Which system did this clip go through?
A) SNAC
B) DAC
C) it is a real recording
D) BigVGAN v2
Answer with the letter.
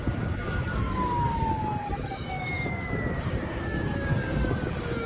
B